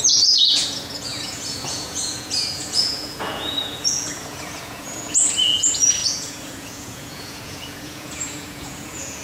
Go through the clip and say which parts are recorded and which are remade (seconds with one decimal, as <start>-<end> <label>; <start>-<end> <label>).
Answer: 0.0-9.2 remade